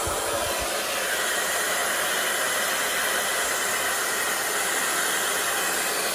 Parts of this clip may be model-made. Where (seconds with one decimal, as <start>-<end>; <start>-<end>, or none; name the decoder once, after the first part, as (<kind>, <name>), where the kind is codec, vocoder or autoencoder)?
none